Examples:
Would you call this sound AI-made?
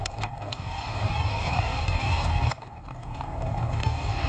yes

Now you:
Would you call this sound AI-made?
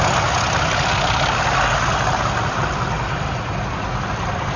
no